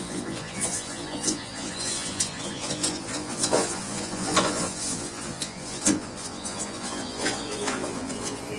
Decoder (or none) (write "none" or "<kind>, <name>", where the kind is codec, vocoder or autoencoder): vocoder, Vocos